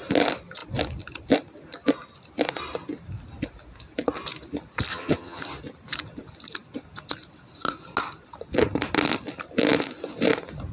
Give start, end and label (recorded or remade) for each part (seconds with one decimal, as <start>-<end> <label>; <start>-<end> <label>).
0.0-4.9 recorded; 4.9-5.4 remade; 5.4-10.7 recorded